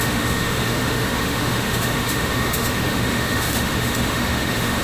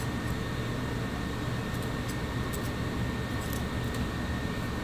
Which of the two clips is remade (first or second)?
first